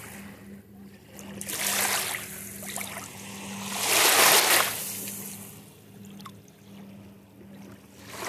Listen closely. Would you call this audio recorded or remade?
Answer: recorded